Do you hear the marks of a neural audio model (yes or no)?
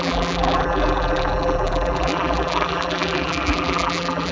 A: yes